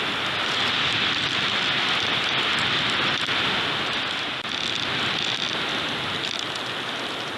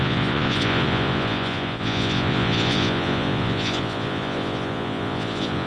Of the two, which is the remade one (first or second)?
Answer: second